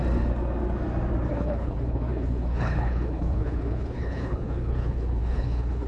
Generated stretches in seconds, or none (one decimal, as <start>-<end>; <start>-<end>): 1.3-5.9